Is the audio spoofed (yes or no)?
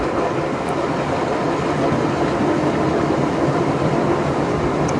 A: no